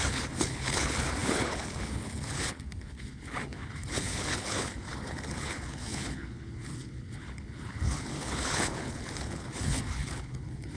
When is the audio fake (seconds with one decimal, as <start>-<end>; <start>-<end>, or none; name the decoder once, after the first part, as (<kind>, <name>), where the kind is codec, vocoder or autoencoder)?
0.0-10.8 (codec, HILCodec)